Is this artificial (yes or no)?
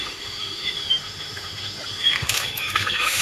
yes